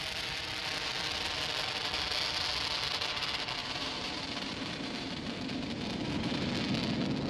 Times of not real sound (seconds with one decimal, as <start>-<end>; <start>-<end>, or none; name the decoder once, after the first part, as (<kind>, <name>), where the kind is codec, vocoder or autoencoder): 3.6-6.5 (vocoder, BigVGAN v2)